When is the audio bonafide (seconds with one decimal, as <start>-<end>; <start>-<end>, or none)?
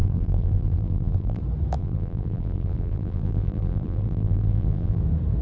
1.4-1.8; 5.0-5.4